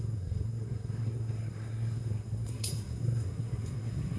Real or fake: fake